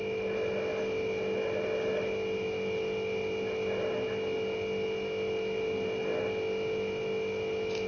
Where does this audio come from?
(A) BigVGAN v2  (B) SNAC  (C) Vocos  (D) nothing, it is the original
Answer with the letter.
D